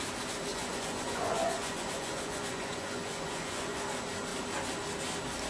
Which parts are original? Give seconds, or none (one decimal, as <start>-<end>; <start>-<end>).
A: 0.0-0.5; 3.8-5.5